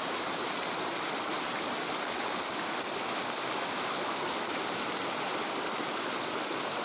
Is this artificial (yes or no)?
no